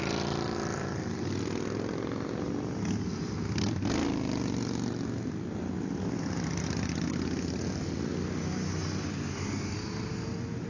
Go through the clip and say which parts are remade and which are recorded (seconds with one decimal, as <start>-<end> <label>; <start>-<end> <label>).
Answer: 0.0-10.7 recorded